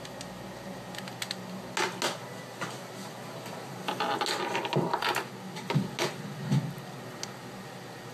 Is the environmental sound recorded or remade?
recorded